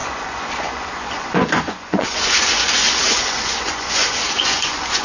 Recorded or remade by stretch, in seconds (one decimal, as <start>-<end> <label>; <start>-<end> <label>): 0.0-5.0 remade